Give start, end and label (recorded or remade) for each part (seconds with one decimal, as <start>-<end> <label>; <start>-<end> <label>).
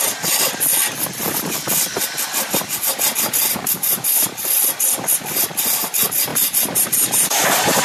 0.0-6.3 recorded; 6.3-7.8 remade